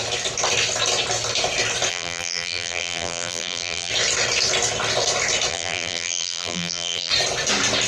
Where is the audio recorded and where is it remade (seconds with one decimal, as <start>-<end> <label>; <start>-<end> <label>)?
0.0-1.9 recorded; 1.9-3.9 remade; 3.9-5.5 recorded; 5.5-7.1 remade; 7.1-7.9 recorded